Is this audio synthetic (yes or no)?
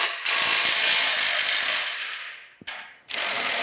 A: no